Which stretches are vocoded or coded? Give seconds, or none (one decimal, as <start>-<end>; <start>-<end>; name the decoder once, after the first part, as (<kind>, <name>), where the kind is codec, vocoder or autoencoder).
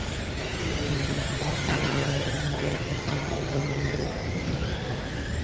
0.9-4.1 (vocoder, HiFi-GAN)